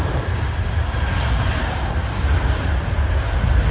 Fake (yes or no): no